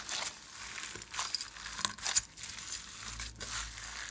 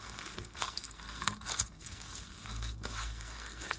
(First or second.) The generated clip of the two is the second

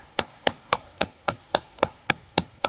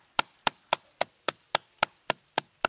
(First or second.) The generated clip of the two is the first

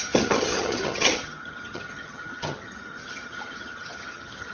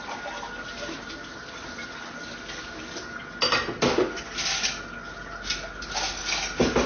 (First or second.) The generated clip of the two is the first